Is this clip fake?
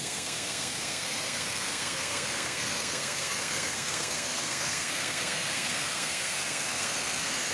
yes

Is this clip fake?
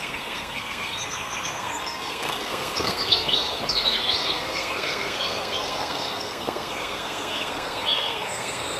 yes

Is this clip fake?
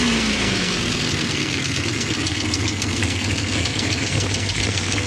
yes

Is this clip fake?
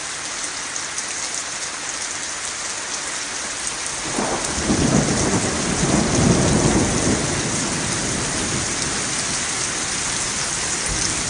no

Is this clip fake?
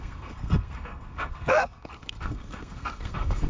yes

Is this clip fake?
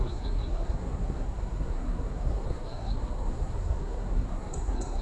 yes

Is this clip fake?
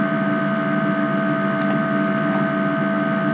no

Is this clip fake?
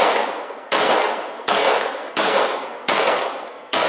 yes